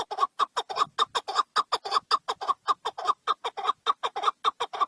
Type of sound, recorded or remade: recorded